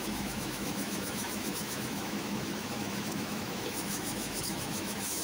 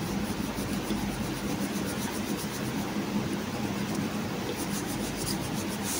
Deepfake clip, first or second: first